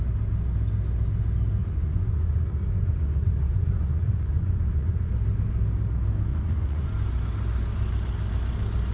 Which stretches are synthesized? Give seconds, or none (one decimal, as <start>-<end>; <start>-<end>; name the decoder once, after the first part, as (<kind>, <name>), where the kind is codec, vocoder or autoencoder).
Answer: 1.6-5.1 (vocoder, Vocos); 6.3-6.9